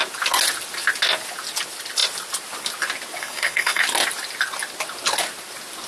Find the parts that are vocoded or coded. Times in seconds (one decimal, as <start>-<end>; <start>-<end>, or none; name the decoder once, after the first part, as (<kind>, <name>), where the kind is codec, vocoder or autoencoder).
3.2-3.8 (codec, SNAC)